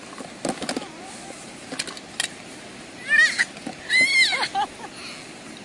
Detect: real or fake real